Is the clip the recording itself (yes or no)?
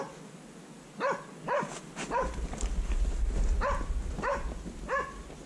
yes